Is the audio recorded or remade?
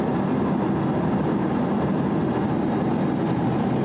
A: recorded